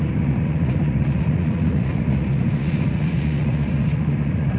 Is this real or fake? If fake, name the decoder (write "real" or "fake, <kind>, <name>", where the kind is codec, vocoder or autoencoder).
fake, vocoder, Vocos